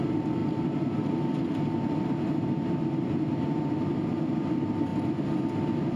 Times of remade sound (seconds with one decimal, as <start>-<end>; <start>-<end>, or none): none